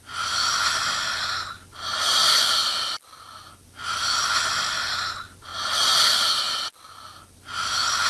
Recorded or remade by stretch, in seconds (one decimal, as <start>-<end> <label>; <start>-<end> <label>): 0.0-8.1 recorded